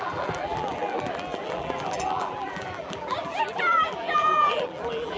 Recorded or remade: remade